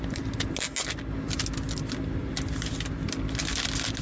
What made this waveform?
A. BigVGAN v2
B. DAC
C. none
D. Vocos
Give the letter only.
C